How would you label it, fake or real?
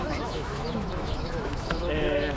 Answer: fake